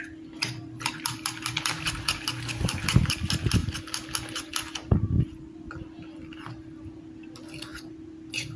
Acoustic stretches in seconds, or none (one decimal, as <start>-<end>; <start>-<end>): 0.0-8.6